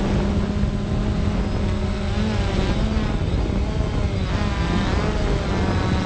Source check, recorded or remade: recorded